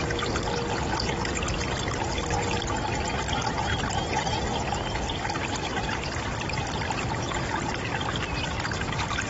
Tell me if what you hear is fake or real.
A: real